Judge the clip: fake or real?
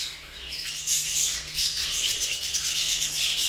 fake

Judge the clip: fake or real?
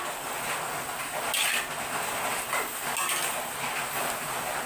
real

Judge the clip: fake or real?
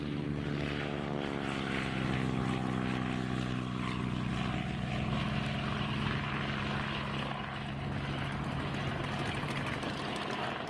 real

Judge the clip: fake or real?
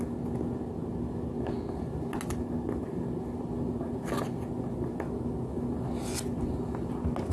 real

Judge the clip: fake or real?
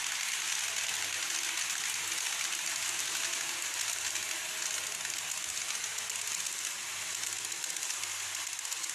real